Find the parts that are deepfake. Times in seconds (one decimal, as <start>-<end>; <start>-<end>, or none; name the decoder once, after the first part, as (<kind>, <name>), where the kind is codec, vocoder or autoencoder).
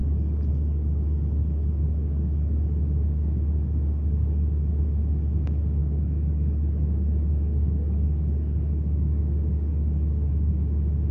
0.0-4.8 (codec, DAC); 5.8-10.5